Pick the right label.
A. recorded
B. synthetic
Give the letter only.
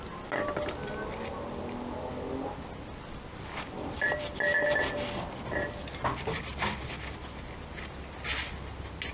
A